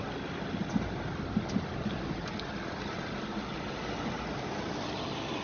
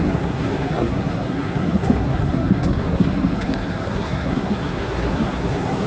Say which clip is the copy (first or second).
second